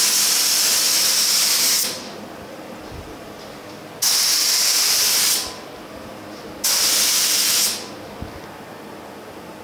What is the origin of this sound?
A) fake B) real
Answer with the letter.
B